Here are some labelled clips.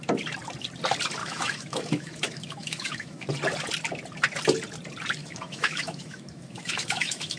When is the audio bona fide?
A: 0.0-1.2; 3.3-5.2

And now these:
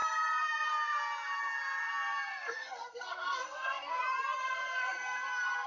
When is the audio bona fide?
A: 0.0-2.3; 4.0-4.4